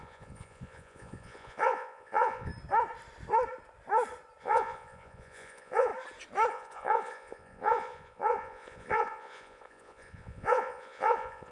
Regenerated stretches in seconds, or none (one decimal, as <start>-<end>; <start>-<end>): 0.0-2.5; 4.4-5.9; 6.5-11.5